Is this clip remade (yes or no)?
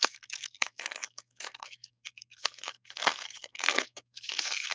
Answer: yes